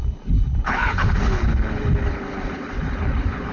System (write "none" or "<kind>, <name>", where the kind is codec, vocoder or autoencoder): codec, HILCodec